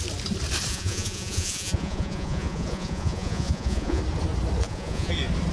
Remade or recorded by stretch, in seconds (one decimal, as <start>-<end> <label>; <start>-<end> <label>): 0.0-0.7 recorded; 0.7-4.0 remade; 4.0-4.6 recorded; 4.6-5.1 remade; 5.1-5.5 recorded